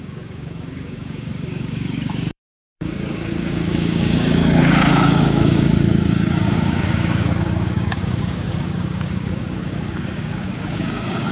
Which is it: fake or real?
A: fake